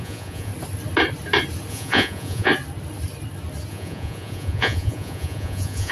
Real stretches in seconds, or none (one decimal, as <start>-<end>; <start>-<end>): 0.5-1.7; 2.5-3.7